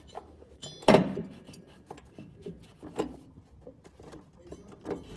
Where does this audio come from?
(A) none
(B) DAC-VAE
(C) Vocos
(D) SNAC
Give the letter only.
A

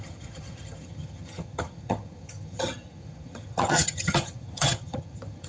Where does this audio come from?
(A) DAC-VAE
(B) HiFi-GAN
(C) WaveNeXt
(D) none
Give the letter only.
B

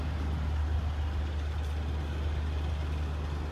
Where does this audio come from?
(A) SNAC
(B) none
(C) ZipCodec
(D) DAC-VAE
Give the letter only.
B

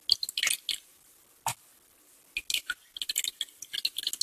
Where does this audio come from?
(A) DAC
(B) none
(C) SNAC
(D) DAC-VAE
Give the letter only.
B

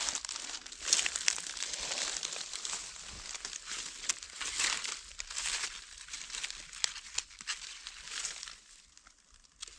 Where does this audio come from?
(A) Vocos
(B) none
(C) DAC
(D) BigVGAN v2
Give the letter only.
B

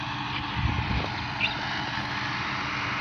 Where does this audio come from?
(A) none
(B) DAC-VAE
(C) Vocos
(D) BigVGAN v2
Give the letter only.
A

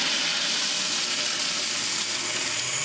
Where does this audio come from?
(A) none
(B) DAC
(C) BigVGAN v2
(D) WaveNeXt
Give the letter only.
A